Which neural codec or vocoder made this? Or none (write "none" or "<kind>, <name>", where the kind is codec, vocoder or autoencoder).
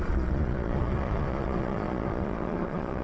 vocoder, Vocos